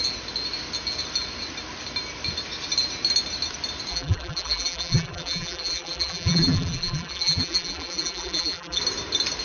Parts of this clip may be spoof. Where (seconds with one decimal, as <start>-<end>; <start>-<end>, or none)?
3.9-8.8